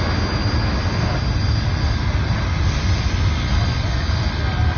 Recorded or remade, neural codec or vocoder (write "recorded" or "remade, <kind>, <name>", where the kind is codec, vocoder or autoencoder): remade, vocoder, BigVGAN v2